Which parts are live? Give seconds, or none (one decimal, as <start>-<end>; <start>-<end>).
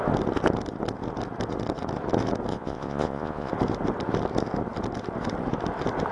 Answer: 0.0-2.5; 3.5-6.1